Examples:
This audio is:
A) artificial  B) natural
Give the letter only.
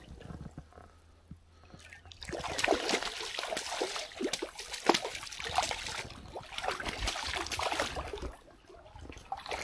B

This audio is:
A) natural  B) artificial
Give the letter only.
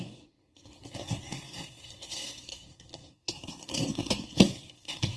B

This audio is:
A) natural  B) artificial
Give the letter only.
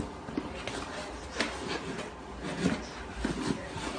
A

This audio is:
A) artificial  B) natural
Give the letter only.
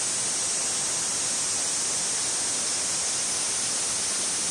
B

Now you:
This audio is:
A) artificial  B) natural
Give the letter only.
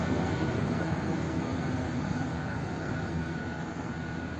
A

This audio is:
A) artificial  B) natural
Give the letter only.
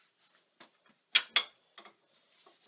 B